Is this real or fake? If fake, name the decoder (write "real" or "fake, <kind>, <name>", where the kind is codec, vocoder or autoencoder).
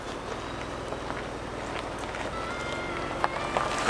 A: real